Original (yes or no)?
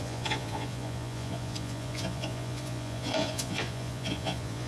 no